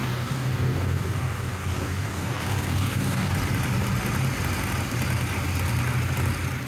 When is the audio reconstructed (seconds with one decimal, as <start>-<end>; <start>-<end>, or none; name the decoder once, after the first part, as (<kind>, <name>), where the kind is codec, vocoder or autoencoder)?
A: 0.0-3.3 (codec, DAC)

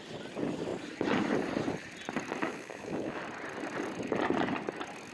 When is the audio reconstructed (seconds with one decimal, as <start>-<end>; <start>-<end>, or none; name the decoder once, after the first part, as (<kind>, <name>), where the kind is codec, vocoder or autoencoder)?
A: 2.4-3.2 (autoencoder, DAC-VAE)